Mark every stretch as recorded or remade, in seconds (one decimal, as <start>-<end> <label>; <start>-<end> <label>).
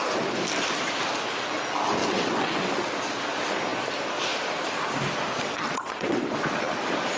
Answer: 0.0-2.0 recorded; 2.0-2.7 remade; 2.7-5.3 recorded; 5.3-6.3 remade; 6.3-7.2 recorded